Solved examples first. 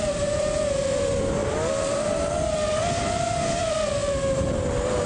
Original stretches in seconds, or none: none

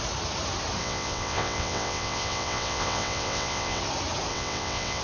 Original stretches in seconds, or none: 0.0-0.8; 3.8-4.3